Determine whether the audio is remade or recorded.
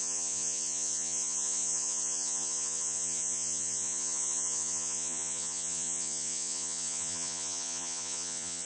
remade